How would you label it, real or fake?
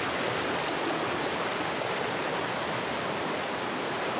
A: real